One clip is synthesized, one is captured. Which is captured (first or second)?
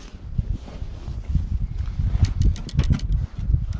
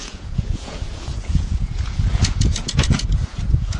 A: first